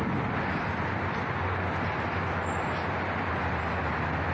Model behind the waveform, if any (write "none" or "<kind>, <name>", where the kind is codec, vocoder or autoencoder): none